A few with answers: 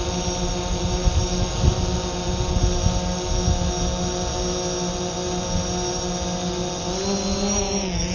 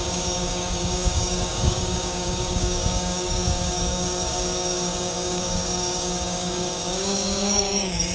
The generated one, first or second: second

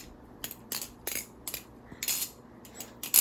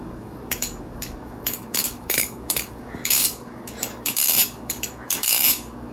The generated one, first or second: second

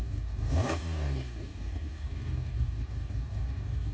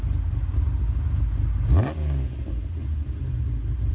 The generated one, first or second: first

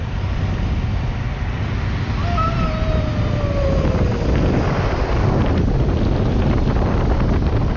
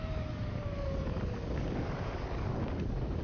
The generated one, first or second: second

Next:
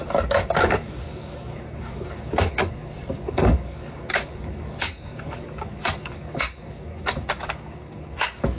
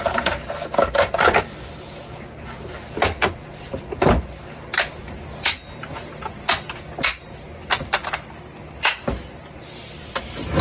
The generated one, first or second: first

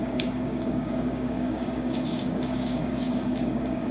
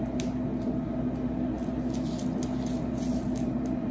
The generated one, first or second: first